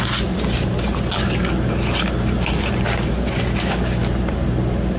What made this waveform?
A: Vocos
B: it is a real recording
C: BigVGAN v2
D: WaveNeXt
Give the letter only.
B